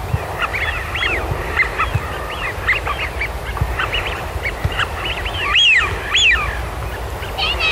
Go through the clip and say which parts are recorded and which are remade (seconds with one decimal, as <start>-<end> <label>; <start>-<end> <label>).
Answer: 0.0-3.8 recorded; 3.8-4.8 remade; 4.8-7.7 recorded